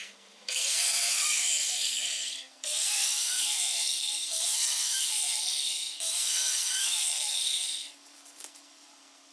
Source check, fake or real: fake